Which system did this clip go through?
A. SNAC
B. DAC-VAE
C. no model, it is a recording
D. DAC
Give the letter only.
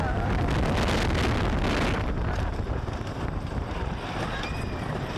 C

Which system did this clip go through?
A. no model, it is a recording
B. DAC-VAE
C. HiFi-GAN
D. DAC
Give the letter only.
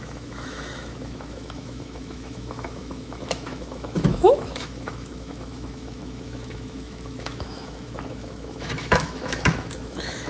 B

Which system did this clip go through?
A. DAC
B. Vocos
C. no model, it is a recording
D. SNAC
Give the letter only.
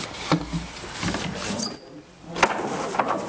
C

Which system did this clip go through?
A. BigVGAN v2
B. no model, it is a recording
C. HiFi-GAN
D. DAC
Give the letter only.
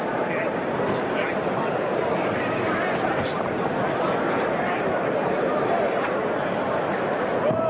B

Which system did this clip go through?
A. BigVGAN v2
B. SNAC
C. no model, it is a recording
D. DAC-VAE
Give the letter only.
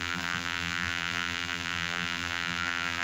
A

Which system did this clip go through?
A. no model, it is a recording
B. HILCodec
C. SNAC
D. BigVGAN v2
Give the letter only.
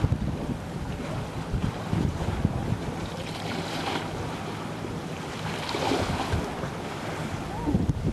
D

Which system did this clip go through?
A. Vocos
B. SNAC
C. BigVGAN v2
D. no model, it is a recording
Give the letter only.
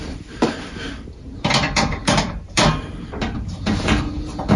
C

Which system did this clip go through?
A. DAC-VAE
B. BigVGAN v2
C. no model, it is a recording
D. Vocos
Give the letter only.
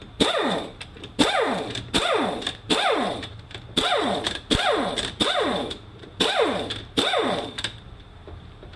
B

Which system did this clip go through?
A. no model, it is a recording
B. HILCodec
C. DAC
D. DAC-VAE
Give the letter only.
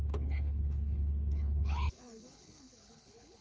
B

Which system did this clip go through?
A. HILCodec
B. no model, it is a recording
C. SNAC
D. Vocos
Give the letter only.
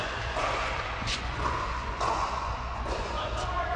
D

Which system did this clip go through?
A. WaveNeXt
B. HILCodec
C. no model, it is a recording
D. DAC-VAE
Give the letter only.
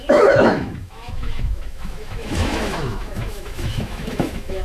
D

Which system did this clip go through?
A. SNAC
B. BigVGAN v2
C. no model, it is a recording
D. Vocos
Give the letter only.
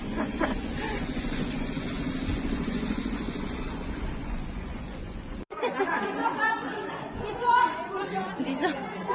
D